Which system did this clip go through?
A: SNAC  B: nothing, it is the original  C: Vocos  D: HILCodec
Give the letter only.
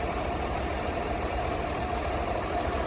B